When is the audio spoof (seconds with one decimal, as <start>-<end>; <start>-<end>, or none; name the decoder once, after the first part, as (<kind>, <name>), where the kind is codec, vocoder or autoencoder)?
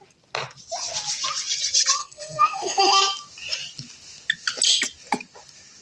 2.0-3.0 (codec, SNAC)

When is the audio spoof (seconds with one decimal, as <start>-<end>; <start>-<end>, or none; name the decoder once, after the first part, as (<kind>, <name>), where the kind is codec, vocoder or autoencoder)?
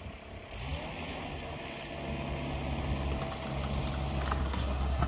4.4-5.1 (codec, SNAC)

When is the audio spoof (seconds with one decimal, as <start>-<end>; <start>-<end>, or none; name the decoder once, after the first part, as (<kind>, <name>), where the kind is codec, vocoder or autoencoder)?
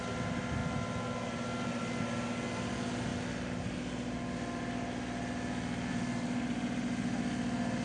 none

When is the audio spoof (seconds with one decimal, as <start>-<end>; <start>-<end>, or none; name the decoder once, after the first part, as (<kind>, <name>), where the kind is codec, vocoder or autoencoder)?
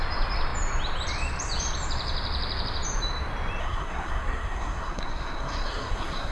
3.6-6.3 (codec, SNAC)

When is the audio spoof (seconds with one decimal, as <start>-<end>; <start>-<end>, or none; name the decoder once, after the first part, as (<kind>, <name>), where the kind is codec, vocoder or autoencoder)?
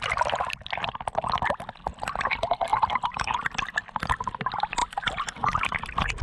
none